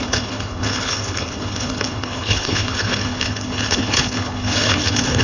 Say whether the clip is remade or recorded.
remade